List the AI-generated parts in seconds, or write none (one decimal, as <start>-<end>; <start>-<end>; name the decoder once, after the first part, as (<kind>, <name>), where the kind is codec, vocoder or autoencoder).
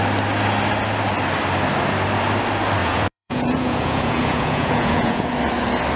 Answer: 2.8-5.3 (vocoder, Vocos)